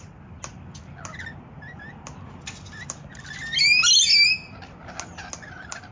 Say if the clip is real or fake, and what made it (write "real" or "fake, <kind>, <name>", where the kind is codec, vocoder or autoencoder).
real